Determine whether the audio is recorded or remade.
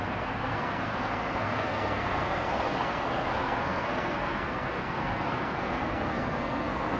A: remade